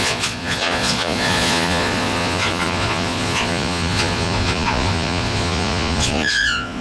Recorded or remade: remade